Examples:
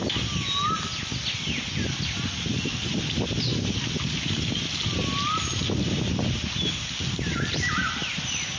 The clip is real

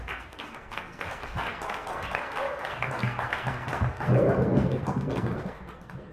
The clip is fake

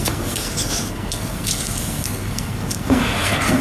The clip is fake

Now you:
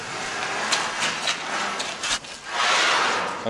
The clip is real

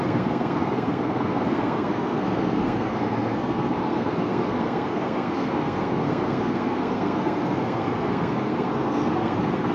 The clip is fake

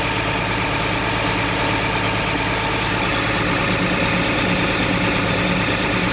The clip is real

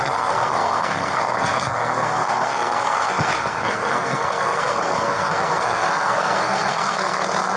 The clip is fake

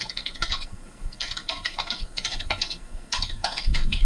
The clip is fake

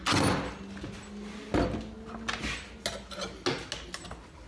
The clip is real